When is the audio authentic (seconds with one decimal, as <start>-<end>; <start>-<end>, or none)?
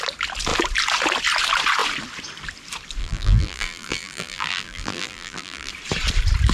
0.0-3.0; 5.7-6.5